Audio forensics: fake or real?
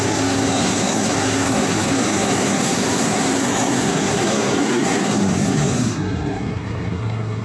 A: fake